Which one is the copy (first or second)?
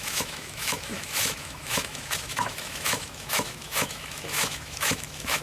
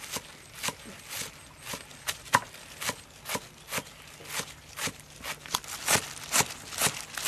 first